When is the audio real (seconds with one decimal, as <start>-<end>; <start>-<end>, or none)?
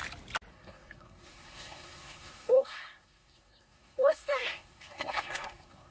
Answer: 0.0-0.5